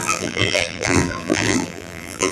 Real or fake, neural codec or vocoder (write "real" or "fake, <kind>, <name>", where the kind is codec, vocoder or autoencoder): fake, vocoder, BigVGAN v2